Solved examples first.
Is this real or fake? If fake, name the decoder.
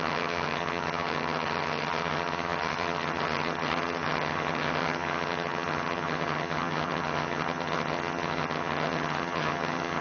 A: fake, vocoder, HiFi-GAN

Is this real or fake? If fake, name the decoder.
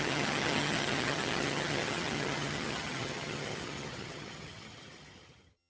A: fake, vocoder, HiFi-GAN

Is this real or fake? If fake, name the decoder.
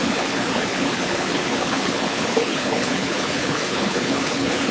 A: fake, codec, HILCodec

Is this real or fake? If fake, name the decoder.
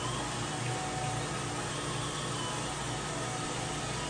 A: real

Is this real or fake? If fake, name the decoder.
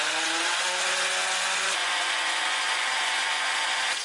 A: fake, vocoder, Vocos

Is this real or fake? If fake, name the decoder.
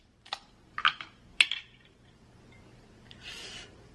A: fake, vocoder, BigVGAN v2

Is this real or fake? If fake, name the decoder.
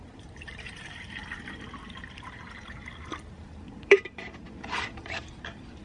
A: fake, vocoder, BigVGAN v2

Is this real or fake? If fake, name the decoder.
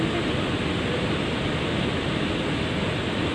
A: real